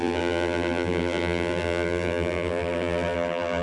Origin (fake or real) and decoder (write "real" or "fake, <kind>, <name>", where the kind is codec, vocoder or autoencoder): fake, vocoder, BigVGAN v2